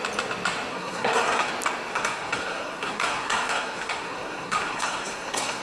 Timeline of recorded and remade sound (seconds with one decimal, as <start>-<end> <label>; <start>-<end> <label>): 0.0-0.7 recorded; 0.7-1.5 remade; 1.5-1.9 recorded; 1.9-5.6 remade